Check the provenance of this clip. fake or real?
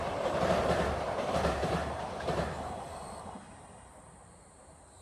fake